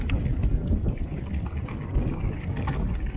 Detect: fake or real real